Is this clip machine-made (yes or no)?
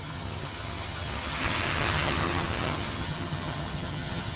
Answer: yes